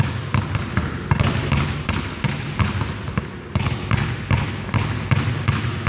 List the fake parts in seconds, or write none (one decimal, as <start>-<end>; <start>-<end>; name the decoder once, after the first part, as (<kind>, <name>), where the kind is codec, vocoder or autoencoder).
none